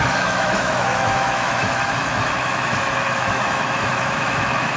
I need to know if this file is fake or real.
fake